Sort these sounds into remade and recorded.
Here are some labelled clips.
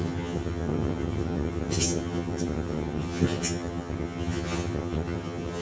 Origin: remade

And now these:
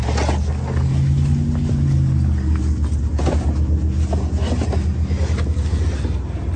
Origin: recorded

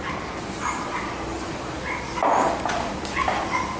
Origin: recorded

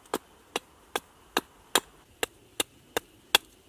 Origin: recorded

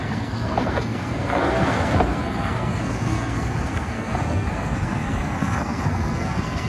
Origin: remade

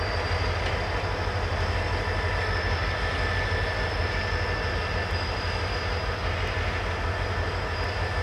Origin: recorded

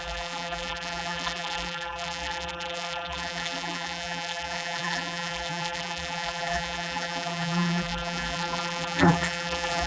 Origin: remade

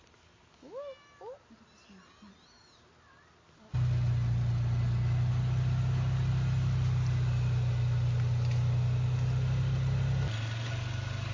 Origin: recorded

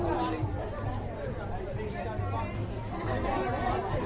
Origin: recorded